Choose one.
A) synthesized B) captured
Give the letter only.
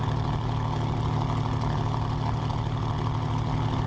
B